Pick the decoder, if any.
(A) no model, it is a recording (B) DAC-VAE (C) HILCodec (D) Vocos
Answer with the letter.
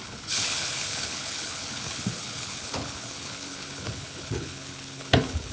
C